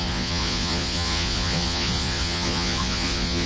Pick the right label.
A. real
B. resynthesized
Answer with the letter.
B